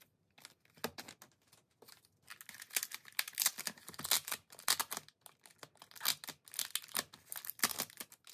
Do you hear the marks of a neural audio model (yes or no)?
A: no